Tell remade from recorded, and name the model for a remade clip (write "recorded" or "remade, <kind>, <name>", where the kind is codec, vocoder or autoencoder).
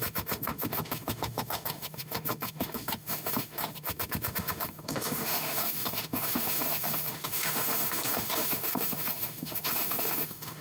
remade, autoencoder, DAC-VAE